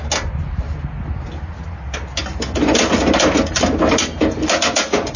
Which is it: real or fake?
real